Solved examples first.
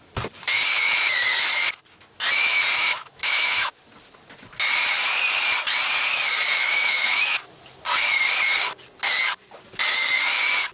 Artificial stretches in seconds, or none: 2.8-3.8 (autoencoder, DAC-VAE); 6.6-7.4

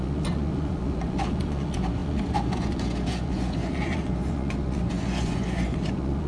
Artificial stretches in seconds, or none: 0.0-6.3 (vocoder, Vocos)

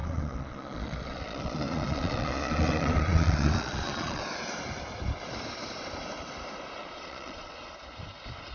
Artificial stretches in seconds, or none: 0.0-4.2 (vocoder, Vocos); 6.8-7.7